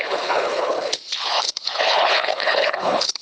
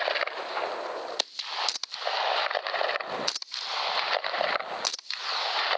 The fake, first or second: first